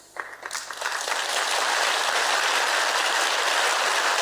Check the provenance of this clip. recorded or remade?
recorded